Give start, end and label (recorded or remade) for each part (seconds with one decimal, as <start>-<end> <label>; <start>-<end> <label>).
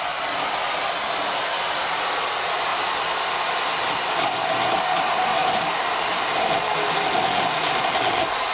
0.0-8.5 recorded